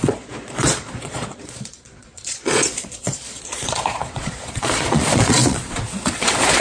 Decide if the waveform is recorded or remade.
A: remade